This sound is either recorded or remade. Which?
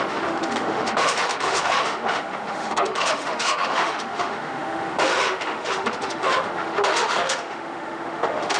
remade